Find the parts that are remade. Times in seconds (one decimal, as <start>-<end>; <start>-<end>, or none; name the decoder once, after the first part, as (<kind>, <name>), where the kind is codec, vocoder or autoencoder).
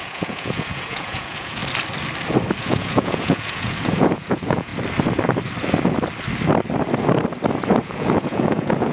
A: 0.0-1.6 (vocoder, Vocos); 2.6-4.7; 7.8-8.9